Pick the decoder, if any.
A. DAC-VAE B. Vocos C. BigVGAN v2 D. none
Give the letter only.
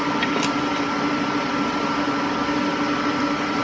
D